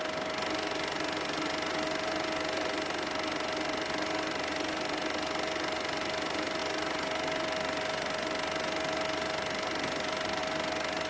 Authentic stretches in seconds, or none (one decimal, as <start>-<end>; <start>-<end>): 0.0-11.1